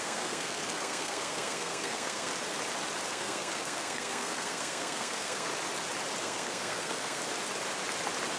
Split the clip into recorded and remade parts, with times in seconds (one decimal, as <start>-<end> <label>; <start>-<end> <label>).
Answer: 0.0-2.3 remade; 2.3-3.1 recorded; 3.1-5.5 remade; 5.5-6.2 recorded; 6.2-7.2 remade; 7.2-8.4 recorded